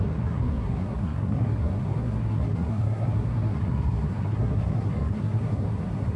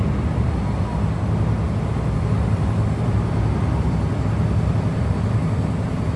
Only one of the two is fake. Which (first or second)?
first